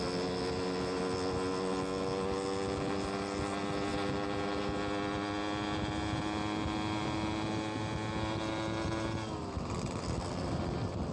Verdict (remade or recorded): recorded